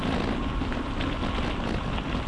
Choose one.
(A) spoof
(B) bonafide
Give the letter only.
B